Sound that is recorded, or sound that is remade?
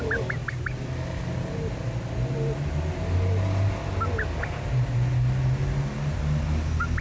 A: recorded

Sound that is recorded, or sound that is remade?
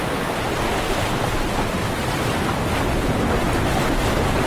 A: recorded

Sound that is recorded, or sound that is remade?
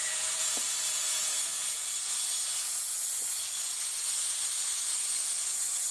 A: remade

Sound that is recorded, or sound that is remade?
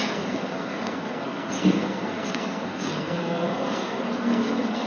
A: remade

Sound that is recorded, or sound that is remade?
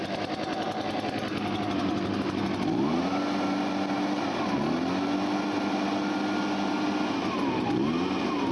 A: recorded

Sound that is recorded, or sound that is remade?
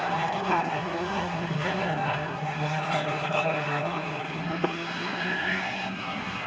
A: remade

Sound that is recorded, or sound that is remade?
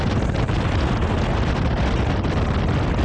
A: recorded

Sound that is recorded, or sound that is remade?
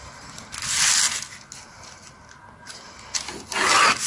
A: recorded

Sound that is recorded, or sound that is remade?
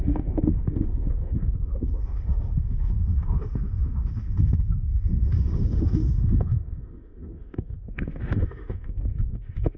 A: remade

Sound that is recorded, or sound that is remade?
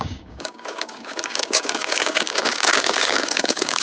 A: remade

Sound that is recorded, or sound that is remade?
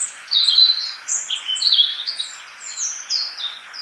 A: remade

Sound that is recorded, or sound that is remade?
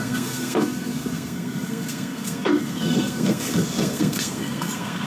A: remade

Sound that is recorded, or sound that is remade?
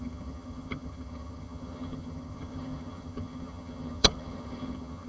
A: remade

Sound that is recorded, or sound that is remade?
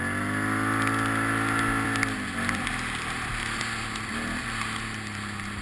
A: recorded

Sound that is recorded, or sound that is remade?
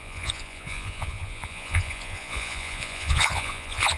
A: remade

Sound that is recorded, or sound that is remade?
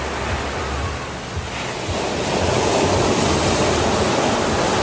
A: recorded